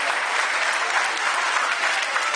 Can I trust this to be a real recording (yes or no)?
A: yes